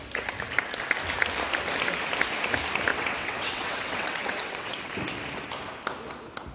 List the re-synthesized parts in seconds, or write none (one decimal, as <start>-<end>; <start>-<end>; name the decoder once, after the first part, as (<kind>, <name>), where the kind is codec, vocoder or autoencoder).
2.9-4.9 (vocoder, WaveNeXt)